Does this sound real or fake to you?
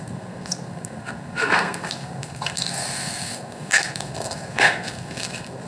fake